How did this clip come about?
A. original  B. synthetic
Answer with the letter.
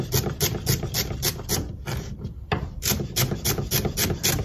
A